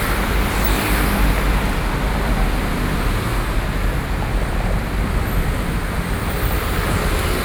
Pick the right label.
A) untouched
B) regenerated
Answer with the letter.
A